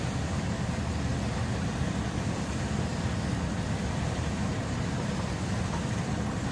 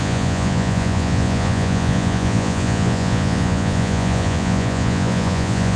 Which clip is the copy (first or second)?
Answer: second